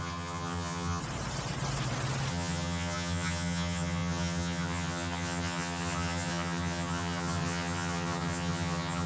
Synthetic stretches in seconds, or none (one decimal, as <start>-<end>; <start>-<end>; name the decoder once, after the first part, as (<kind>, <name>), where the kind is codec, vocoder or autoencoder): 0.0-1.0 (vocoder, HiFi-GAN); 2.3-9.1